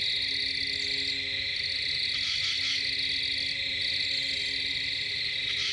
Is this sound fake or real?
real